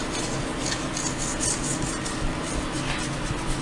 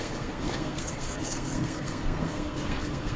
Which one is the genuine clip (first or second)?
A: first